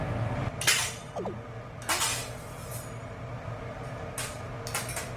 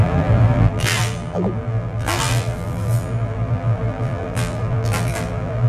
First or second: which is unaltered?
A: first